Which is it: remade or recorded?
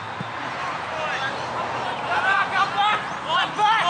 recorded